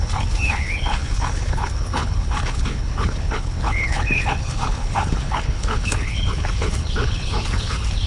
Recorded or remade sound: remade